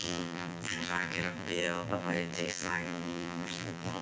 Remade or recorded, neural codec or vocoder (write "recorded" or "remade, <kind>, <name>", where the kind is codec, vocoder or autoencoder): remade, vocoder, BigVGAN v2